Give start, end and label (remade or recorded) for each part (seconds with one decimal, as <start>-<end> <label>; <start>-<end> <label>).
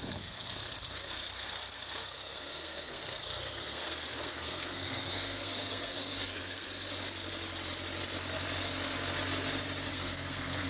0.0-6.7 remade; 6.7-9.9 recorded; 9.9-10.7 remade